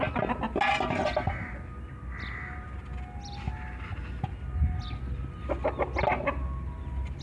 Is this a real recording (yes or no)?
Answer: yes